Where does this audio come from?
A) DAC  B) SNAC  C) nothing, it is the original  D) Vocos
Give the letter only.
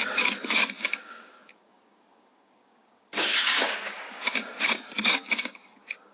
A